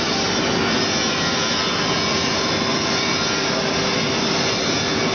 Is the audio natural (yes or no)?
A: yes